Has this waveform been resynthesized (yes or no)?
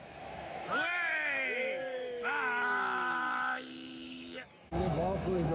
yes